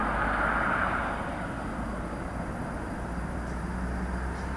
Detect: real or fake real